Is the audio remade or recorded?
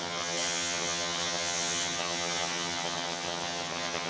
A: remade